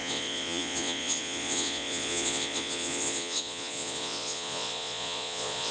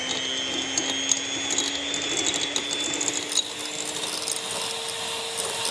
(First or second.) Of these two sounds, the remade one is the first